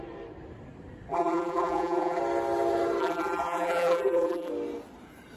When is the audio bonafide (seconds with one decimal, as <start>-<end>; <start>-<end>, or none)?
0.0-1.1; 2.2-3.0; 4.5-5.4